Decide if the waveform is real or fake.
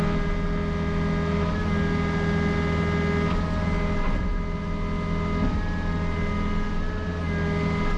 real